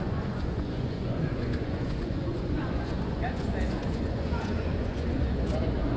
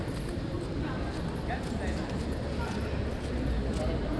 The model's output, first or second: first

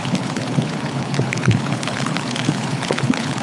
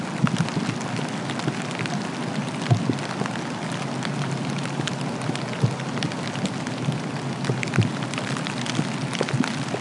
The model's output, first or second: first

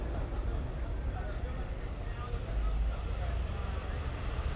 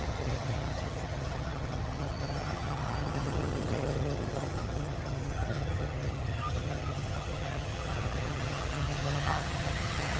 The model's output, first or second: second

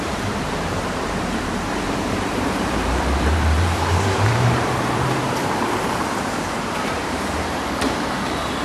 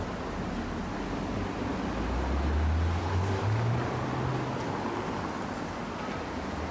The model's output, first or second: first